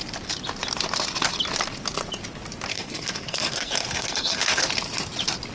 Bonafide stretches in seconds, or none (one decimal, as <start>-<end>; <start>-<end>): 0.0-2.7; 4.6-5.5